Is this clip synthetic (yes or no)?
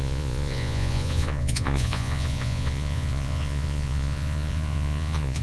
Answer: yes